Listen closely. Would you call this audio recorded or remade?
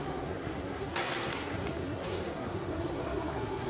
remade